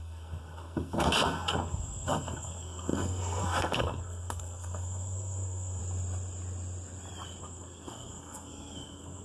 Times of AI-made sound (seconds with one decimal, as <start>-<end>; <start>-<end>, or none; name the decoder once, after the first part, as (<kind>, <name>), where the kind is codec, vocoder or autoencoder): 0.0-5.8 (codec, SNAC); 7.4-9.2